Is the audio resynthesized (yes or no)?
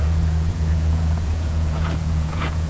yes